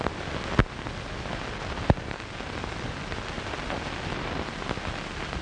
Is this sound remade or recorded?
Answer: recorded